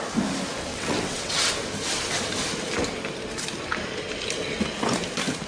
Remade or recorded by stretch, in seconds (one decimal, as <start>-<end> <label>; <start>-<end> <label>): 0.0-0.7 recorded; 0.7-1.5 remade; 1.5-5.5 recorded